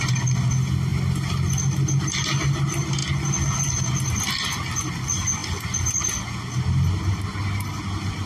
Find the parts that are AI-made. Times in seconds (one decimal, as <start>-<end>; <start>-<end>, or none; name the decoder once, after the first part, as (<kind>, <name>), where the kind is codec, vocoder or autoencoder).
none